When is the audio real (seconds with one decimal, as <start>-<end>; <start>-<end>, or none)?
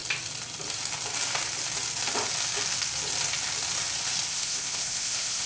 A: 0.0-4.3